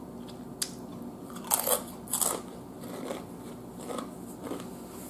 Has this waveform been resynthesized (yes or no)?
no